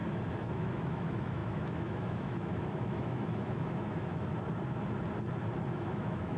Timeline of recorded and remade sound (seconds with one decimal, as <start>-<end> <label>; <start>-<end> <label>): 0.0-4.3 remade; 4.3-5.7 recorded; 5.7-6.4 remade